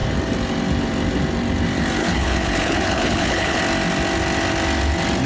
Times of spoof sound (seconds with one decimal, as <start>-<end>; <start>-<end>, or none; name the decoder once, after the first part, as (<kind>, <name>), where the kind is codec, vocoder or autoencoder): 2.0-3.6 (codec, HILCodec)